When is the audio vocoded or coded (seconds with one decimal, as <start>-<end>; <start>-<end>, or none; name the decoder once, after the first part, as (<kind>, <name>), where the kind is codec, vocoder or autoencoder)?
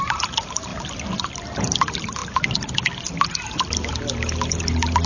none